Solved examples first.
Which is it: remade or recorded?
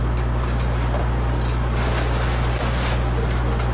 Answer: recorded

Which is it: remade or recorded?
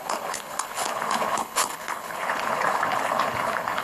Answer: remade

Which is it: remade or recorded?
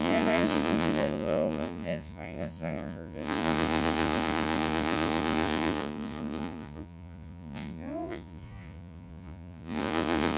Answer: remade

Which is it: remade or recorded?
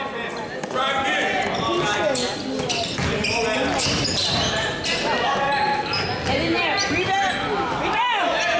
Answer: recorded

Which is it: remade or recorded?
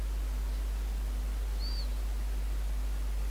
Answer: recorded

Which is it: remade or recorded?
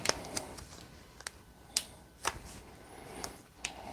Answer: remade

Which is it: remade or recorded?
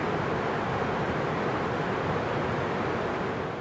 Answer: recorded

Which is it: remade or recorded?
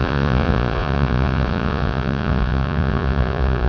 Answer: remade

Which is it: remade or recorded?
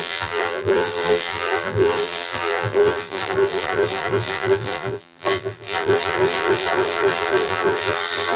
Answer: remade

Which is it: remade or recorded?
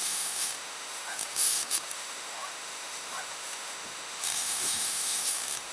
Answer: remade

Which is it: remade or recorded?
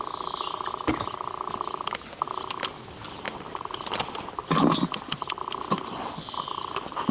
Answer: recorded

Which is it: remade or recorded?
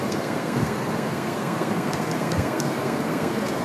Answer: remade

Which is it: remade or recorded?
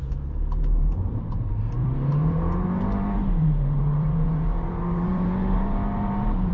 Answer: remade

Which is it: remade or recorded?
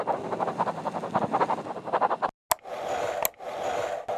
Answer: recorded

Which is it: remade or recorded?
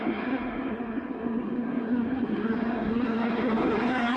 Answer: remade